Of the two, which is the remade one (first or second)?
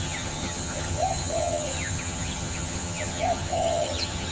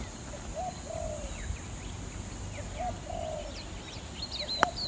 first